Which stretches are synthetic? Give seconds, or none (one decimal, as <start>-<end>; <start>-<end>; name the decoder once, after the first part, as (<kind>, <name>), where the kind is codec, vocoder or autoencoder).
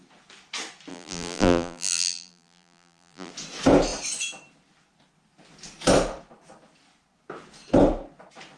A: 0.9-3.3 (vocoder, BigVGAN v2)